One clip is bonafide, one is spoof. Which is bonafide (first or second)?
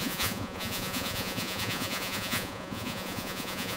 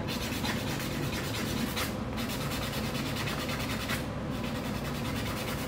second